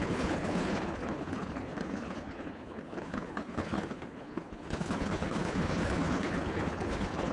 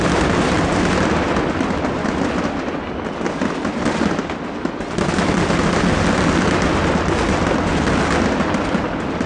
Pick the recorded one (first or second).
second